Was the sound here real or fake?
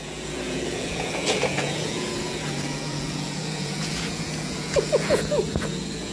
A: fake